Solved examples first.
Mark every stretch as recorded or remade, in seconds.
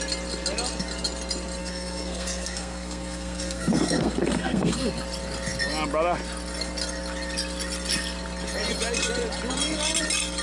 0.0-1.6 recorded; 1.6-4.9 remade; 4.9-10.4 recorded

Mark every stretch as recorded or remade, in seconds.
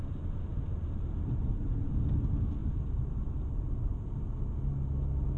0.0-5.4 recorded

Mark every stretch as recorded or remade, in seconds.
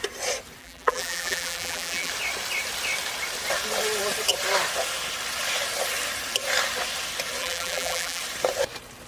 0.0-0.6 recorded; 0.6-2.1 remade; 2.1-7.4 recorded; 7.4-8.2 remade; 8.2-9.1 recorded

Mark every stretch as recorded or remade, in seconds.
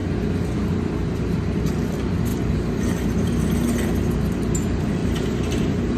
0.0-5.0 recorded; 5.0-6.0 remade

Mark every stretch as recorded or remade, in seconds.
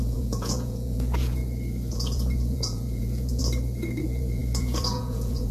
0.0-1.4 remade; 1.4-1.9 recorded; 1.9-3.4 remade; 3.4-4.0 recorded; 4.0-5.5 remade